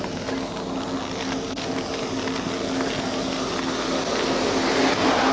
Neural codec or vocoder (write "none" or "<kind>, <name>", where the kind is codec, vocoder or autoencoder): none